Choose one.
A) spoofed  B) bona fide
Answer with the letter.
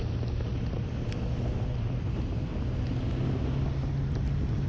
B